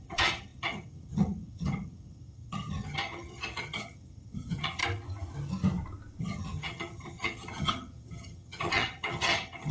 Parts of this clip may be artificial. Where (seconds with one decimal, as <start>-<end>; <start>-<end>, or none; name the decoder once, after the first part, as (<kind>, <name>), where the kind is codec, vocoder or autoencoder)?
0.0-4.8 (vocoder, HiFi-GAN); 6.2-9.7